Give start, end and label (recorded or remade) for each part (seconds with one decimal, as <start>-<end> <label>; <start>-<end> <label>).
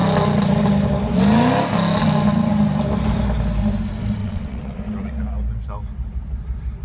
0.0-4.2 recorded; 4.2-4.8 remade; 4.8-6.8 recorded